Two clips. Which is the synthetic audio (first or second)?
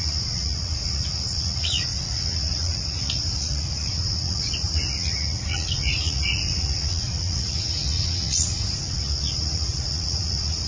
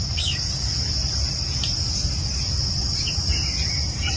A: first